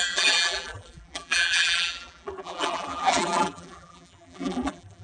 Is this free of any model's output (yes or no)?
no